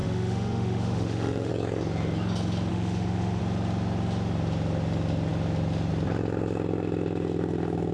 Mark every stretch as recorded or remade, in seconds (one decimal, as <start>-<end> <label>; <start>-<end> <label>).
0.0-1.5 remade; 1.5-2.7 recorded; 2.7-3.4 remade; 3.4-7.9 recorded